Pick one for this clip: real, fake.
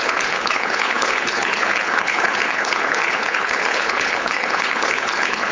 fake